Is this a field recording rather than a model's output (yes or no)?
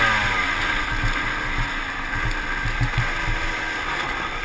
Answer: yes